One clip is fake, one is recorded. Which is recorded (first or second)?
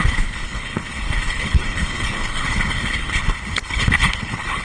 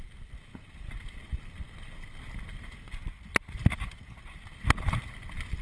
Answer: second